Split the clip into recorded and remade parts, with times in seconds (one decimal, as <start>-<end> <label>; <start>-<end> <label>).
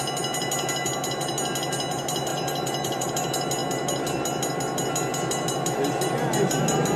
0.0-2.3 recorded; 2.3-3.1 remade; 3.1-7.0 recorded